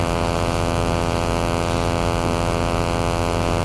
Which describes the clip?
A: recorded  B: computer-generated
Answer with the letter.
A